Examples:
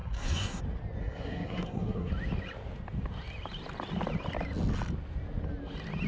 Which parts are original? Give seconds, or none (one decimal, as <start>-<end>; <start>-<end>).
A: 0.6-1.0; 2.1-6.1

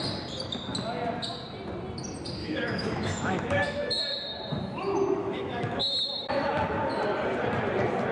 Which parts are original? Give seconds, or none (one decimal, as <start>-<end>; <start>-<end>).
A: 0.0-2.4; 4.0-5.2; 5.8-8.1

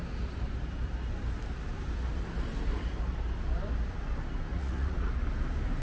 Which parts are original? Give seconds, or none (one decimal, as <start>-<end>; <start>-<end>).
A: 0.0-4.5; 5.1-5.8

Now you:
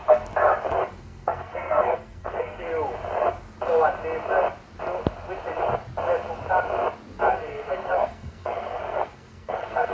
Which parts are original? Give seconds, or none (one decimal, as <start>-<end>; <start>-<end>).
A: 0.0-1.0; 2.7-7.3

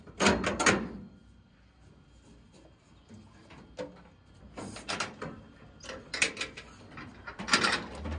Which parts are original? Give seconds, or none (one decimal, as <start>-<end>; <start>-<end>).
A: 0.0-8.2

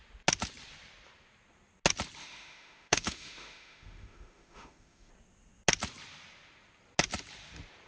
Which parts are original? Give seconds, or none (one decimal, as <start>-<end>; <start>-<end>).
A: 0.0-2.2; 5.1-7.9

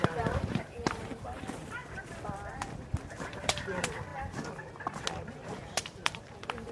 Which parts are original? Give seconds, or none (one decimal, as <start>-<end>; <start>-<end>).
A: 1.8-3.1; 4.1-5.3